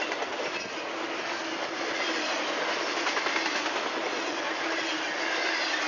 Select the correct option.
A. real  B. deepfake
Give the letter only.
A